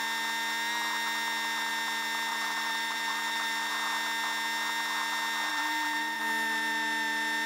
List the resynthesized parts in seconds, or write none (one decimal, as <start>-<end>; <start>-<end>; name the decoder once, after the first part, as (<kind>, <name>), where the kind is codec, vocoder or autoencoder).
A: 2.3-3.7 (vocoder, BigVGAN v2); 5.5-6.2